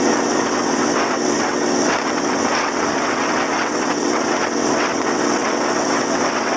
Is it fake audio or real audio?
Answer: fake